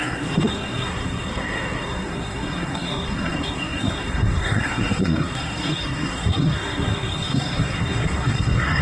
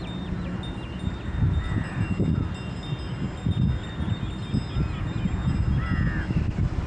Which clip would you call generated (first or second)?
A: first